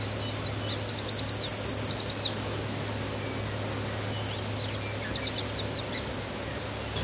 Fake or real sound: real